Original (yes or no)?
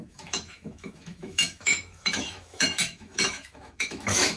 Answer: no